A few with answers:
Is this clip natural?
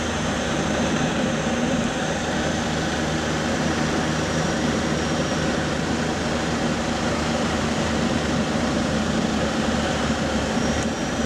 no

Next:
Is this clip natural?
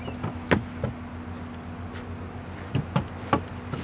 yes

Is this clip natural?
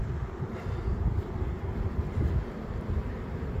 yes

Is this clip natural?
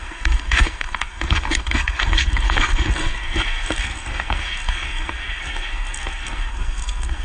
no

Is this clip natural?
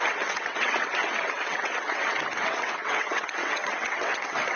no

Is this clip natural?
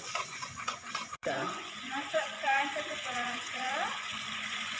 no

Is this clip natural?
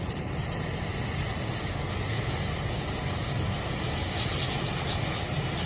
yes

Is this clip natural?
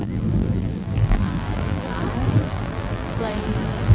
no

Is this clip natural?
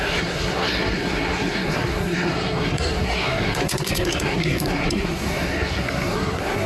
no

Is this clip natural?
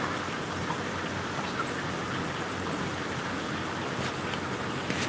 yes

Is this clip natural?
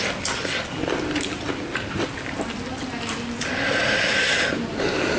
yes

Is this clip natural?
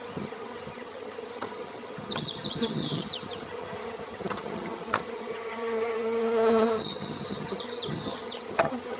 no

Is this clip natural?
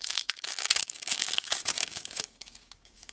no